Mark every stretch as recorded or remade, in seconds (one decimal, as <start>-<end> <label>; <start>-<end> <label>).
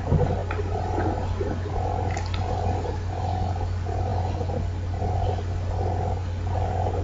0.0-7.0 recorded